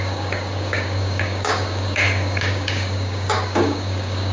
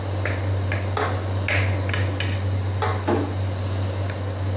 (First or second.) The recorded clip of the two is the second